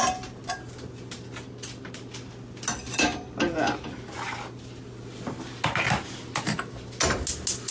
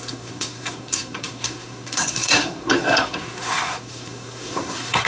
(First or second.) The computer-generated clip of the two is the second